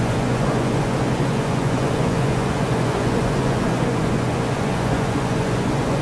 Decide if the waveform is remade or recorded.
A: remade